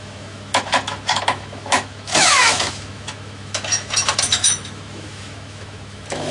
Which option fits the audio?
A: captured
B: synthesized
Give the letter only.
B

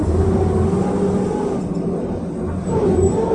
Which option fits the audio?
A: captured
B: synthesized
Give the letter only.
A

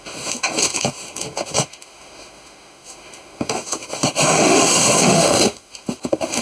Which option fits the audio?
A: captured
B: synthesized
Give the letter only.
B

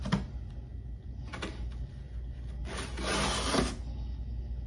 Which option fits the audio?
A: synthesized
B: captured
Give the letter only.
B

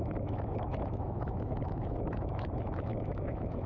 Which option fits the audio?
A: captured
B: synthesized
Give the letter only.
B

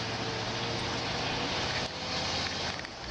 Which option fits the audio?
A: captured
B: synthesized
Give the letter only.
A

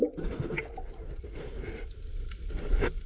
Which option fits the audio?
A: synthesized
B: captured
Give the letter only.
B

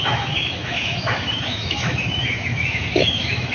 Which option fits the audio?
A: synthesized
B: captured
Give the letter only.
A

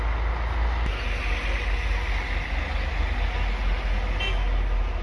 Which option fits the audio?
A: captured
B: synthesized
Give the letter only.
A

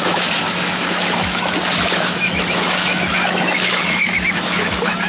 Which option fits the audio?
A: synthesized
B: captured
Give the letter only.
A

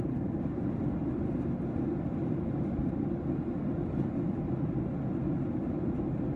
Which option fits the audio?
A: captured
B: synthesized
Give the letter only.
A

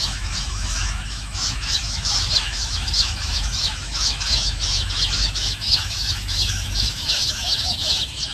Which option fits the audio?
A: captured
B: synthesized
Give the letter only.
B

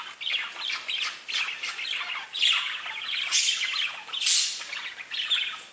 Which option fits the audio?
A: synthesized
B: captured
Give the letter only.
B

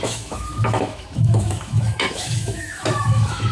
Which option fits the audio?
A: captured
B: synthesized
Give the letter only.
B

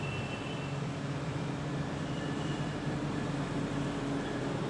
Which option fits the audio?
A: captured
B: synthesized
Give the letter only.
A